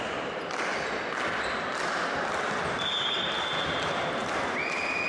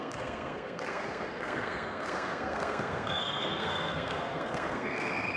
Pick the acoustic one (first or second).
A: first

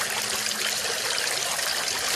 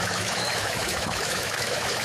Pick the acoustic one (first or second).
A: first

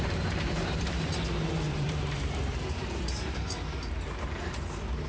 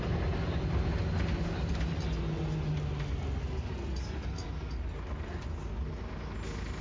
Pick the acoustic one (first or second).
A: second